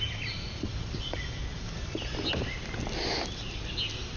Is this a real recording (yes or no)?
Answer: yes